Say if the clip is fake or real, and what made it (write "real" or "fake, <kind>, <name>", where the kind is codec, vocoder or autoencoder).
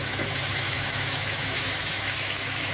fake, autoencoder, DAC-VAE